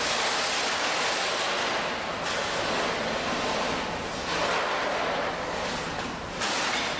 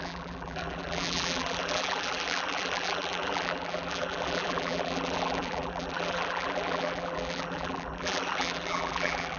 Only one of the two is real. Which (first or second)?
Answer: first